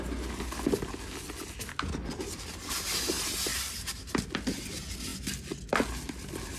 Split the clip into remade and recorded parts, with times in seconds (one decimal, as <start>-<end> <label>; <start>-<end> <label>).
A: 0.0-3.5 recorded; 3.5-4.1 remade; 4.1-6.6 recorded